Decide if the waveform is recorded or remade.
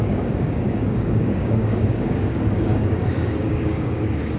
remade